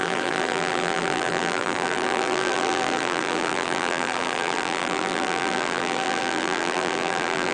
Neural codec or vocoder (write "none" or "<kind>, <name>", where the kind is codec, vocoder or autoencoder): vocoder, BigVGAN v2